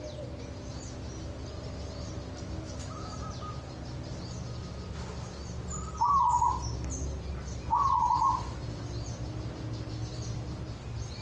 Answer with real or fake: real